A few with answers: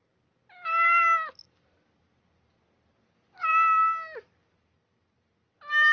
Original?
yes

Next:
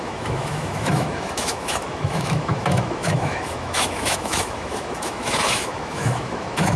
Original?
no